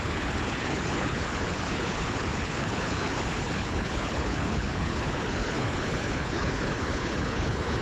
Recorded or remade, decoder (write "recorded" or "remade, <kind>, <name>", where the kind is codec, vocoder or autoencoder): remade, codec, HILCodec